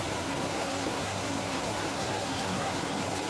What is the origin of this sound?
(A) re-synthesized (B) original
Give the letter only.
A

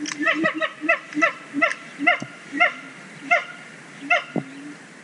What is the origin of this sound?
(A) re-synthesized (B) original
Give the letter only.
A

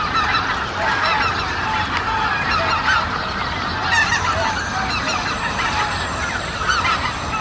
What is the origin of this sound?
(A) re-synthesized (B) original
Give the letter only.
B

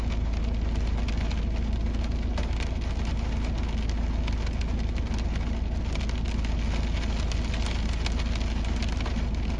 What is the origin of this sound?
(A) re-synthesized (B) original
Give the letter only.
B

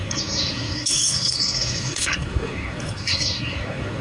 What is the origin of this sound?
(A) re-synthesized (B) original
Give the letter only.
A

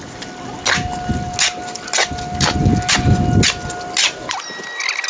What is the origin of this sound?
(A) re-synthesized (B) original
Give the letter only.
B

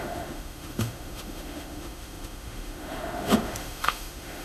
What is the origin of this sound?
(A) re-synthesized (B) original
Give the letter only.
A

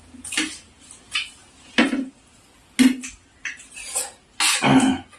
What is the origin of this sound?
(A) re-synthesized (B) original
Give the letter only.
B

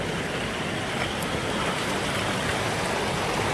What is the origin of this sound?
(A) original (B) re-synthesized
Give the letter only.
A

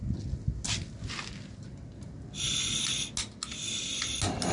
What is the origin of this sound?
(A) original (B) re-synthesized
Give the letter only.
A